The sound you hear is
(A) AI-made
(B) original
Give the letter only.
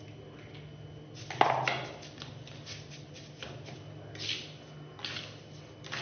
B